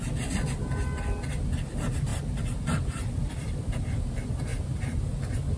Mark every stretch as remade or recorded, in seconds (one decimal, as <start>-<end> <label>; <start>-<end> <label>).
0.0-5.6 recorded